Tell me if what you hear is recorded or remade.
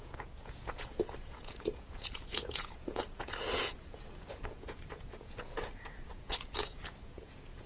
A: remade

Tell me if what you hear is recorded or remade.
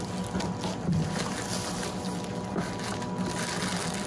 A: recorded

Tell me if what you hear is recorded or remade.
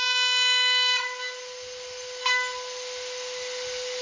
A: recorded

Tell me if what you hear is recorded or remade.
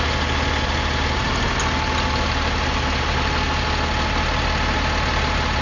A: recorded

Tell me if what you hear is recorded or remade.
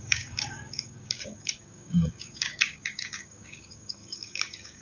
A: remade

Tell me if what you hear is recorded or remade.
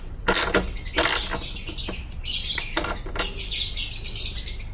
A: recorded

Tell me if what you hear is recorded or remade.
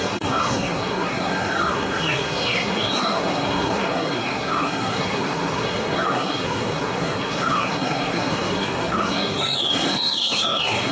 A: remade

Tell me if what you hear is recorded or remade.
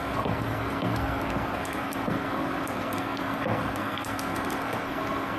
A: remade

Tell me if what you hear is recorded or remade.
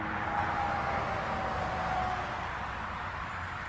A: recorded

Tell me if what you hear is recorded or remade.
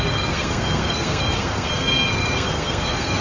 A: remade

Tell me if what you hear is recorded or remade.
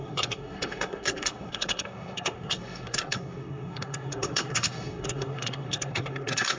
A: remade